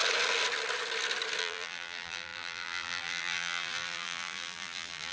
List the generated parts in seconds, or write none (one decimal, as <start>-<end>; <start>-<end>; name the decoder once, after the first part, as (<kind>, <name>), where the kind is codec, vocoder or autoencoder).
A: 1.4-5.1 (vocoder, BigVGAN v2)